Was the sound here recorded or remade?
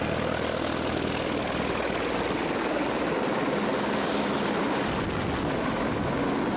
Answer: recorded